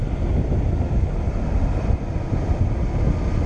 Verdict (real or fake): real